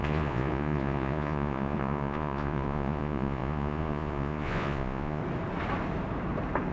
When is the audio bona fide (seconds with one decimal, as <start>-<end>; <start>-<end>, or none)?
5.2-6.7